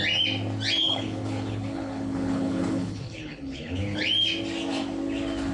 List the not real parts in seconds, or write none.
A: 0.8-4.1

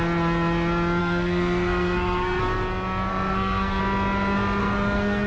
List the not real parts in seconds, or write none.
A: 1.0-2.4; 3.1-3.8; 4.6-5.3

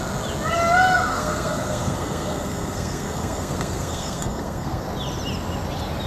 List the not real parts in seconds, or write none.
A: 1.1-4.8

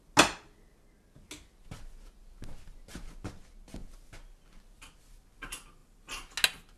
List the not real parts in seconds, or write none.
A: none

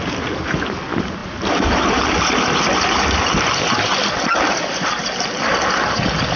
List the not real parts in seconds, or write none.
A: none

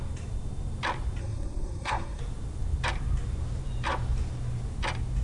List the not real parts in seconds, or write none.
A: 1.2-2.2